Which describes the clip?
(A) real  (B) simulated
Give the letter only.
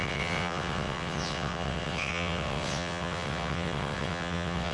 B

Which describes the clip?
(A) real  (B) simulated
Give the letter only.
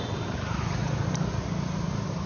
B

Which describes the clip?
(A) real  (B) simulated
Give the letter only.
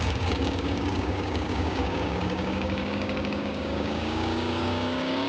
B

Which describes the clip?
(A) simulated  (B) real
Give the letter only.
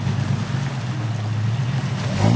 B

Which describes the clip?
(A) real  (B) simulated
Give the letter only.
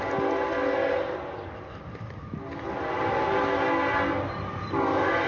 A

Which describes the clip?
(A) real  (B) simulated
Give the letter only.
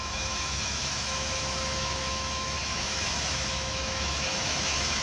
B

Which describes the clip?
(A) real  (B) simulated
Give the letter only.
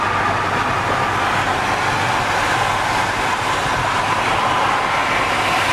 A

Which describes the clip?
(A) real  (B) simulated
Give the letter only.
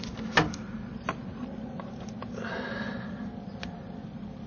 A